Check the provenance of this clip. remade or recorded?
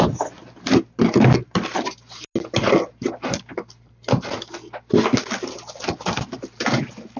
recorded